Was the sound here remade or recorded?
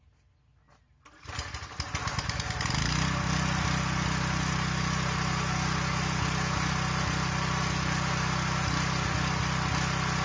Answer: recorded